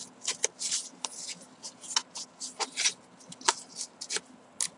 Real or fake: real